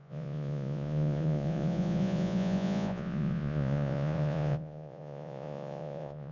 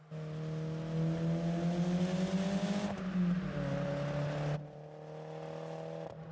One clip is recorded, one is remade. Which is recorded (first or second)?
second